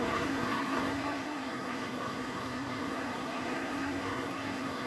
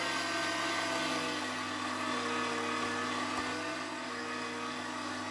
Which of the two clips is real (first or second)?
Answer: second